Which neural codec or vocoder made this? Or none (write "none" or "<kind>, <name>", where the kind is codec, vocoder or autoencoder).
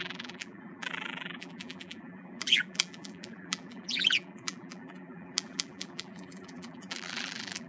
vocoder, BigVGAN v2